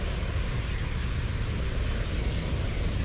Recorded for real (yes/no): yes